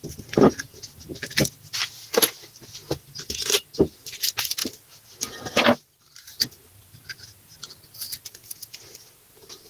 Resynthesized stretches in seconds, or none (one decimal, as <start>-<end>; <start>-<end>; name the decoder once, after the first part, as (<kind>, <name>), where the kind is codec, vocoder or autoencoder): none